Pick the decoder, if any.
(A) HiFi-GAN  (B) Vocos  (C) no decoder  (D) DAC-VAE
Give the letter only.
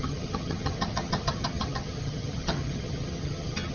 A